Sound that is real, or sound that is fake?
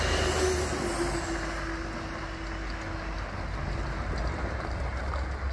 real